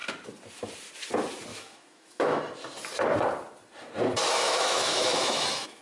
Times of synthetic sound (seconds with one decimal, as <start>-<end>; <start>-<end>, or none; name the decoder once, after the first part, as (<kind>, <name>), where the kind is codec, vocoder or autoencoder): 1.5-2.4 (autoencoder, DAC-VAE); 4.2-5.8